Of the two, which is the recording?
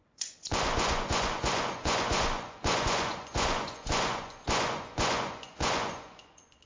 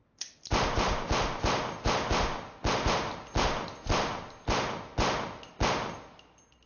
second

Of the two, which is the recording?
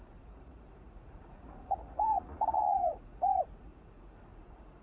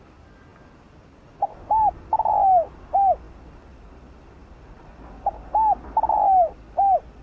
second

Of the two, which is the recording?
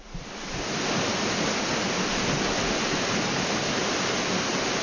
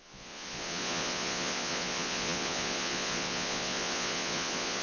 first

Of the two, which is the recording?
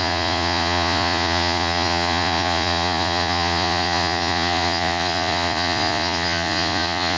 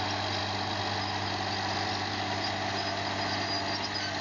second